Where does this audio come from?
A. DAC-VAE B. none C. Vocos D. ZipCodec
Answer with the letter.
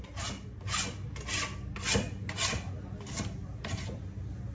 B